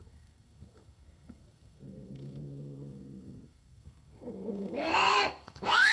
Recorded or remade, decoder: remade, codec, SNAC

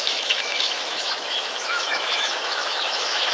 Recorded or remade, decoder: remade, autoencoder, DAC-VAE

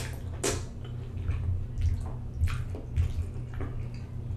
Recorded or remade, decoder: recorded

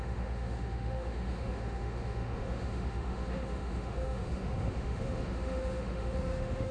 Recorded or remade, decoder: remade, autoencoder, DAC-VAE